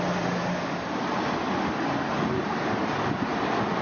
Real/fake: real